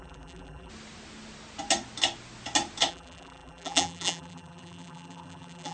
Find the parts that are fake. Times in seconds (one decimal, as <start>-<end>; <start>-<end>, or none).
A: 0.0-0.7; 2.9-5.7